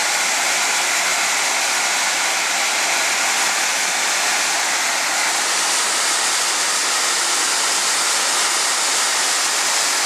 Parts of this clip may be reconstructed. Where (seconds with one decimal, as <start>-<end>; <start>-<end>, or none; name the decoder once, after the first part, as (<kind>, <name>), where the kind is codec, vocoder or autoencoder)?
0.0-0.7 (vocoder, BigVGAN v2); 1.1-3.2